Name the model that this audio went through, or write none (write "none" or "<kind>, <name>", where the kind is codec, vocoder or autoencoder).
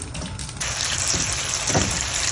none